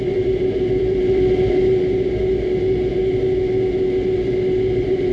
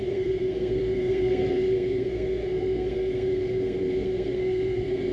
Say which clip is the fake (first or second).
second